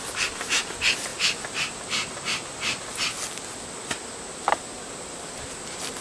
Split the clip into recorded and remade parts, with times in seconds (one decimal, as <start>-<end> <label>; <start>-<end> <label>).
0.0-6.0 recorded